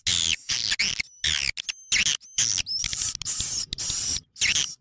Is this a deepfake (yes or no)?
no